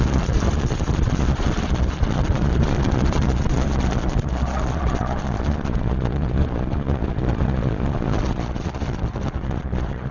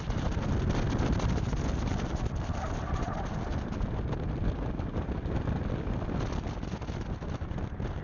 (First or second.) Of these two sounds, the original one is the second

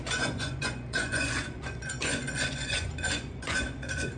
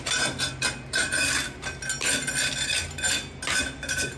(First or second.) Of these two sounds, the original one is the second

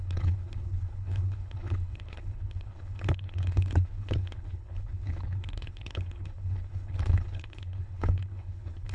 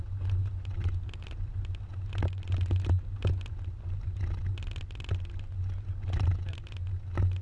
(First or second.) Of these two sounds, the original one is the second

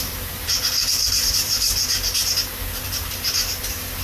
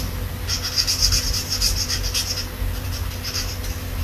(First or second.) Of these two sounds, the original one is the second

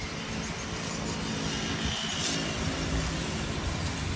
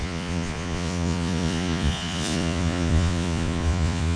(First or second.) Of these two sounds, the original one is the first